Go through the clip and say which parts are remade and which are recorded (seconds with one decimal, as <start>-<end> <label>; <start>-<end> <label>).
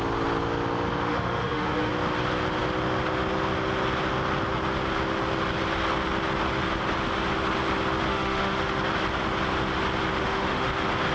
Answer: 0.0-1.1 recorded; 1.1-1.9 remade; 1.9-8.1 recorded; 8.1-8.8 remade; 8.8-10.2 recorded; 10.2-10.7 remade; 10.7-11.1 recorded